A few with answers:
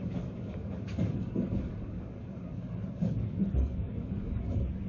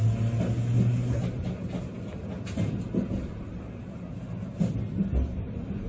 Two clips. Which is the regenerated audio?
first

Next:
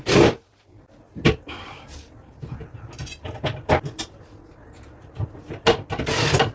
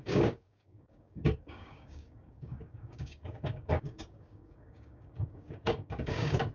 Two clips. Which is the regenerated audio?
second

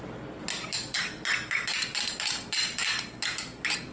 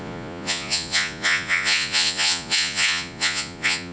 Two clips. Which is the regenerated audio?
second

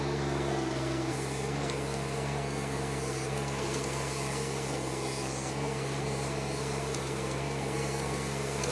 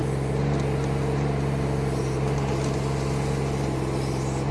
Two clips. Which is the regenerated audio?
first